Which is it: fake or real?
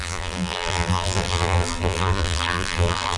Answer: fake